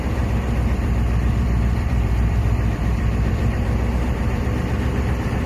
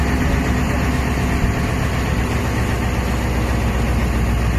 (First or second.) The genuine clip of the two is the second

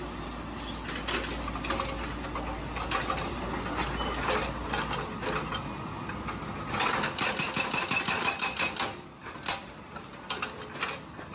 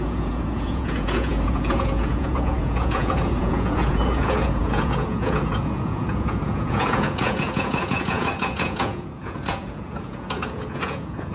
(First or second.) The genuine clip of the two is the first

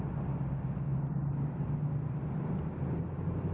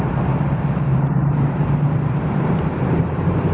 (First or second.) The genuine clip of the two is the first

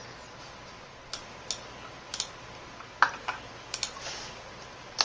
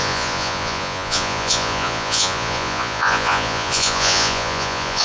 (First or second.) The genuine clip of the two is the first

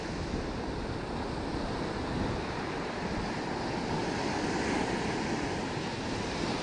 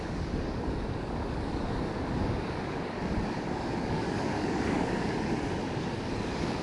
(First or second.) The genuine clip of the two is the first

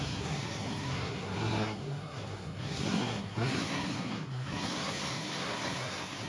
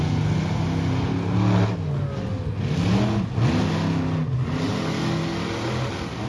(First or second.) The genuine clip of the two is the second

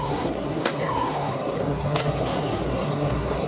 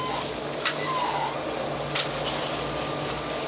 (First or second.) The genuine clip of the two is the second